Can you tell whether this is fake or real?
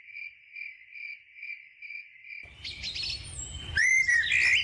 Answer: real